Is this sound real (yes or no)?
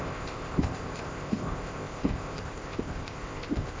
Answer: no